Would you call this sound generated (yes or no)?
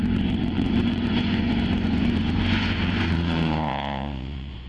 yes